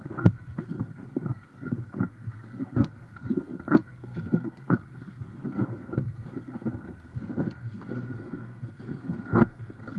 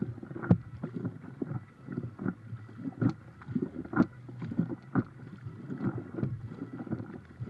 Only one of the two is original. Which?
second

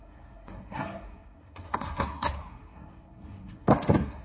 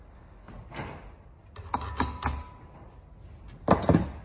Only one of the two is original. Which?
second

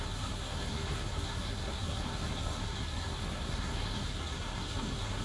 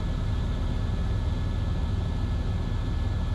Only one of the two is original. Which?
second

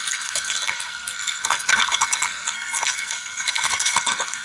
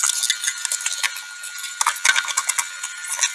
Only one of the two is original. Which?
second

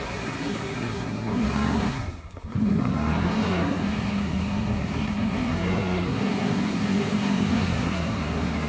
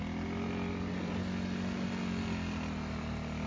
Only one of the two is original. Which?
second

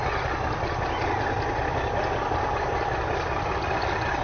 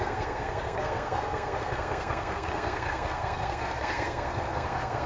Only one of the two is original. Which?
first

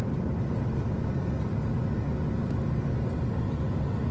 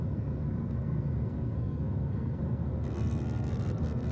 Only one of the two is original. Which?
first